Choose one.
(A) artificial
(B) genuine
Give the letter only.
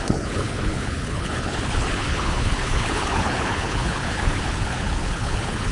A